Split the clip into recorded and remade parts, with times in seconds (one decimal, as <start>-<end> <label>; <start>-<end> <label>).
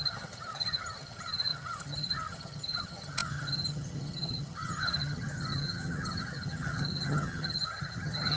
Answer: 0.0-8.4 remade